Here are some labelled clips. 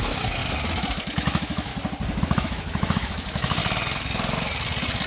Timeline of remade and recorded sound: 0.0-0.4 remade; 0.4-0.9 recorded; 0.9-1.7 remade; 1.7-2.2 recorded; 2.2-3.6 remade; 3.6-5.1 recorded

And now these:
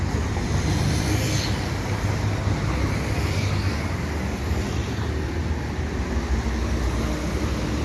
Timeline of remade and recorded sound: 0.0-7.8 recorded